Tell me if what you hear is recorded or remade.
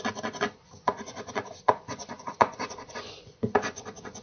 remade